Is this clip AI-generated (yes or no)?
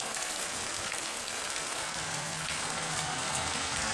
yes